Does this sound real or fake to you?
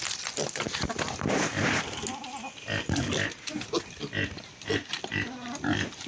real